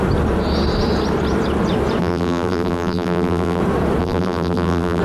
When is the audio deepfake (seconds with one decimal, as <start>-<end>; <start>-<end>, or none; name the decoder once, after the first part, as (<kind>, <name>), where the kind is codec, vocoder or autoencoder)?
2.0-3.6 (vocoder, BigVGAN v2); 4.0-5.0